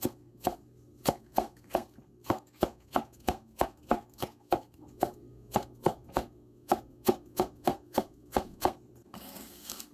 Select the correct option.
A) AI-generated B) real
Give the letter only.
A